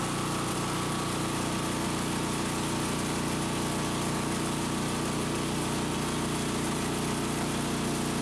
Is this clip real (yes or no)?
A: yes